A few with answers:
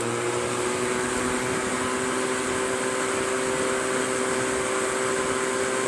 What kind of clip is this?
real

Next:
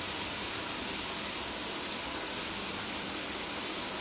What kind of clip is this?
real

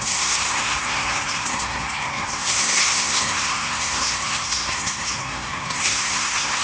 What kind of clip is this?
fake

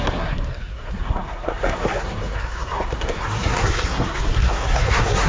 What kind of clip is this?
fake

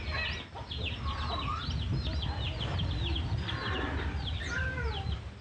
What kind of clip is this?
real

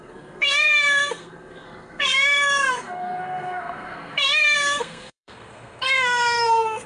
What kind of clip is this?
fake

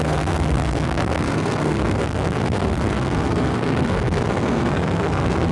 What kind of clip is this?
fake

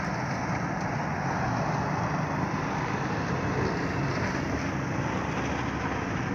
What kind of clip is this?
real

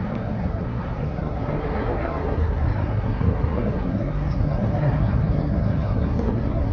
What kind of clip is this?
fake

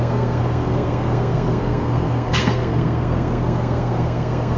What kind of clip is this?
fake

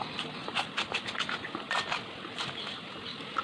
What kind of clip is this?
real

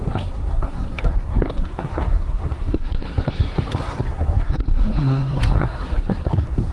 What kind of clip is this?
fake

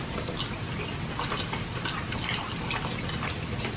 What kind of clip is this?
real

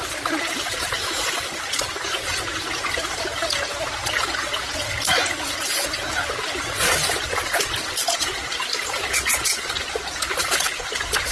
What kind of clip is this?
real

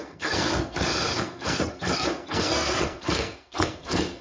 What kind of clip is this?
fake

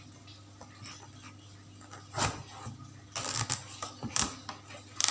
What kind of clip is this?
real